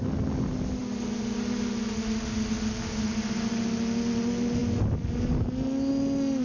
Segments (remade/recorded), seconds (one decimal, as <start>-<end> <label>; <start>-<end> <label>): 0.0-6.4 recorded